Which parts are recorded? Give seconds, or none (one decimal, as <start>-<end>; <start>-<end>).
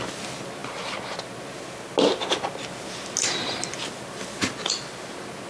0.0-5.5